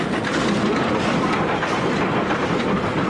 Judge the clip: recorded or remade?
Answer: recorded